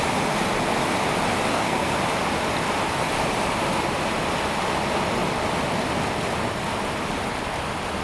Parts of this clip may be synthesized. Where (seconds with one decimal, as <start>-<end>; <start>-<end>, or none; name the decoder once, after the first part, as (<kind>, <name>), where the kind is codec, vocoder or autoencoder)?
1.5-2.0 (codec, SNAC)